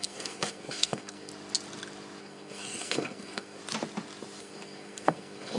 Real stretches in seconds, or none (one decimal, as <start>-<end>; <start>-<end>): 1.3-2.2; 3.6-4.4